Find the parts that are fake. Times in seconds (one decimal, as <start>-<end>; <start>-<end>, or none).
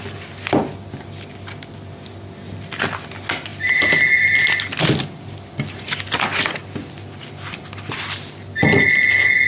3.5-6.0; 6.6-8.0